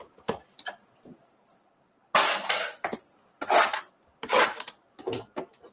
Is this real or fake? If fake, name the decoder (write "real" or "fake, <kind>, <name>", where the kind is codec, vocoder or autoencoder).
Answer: real